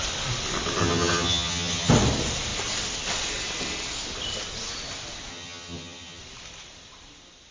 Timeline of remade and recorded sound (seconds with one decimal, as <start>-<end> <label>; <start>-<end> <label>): 0.0-0.8 recorded; 0.8-1.9 remade; 1.9-5.3 recorded; 5.3-6.2 remade; 6.2-7.5 recorded